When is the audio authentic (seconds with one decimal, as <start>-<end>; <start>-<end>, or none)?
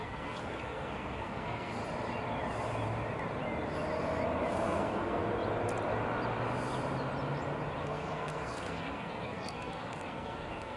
1.8-4.5; 5.2-7.8